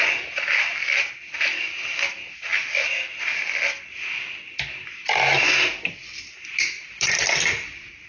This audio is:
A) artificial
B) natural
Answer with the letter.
B